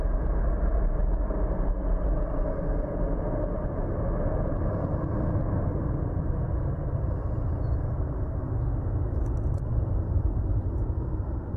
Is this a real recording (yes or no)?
yes